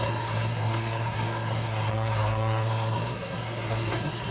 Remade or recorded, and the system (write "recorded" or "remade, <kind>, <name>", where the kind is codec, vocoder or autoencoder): remade, codec, SNAC